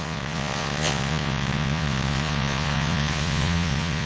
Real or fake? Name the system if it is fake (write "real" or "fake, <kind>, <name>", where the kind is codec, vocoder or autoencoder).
fake, vocoder, Vocos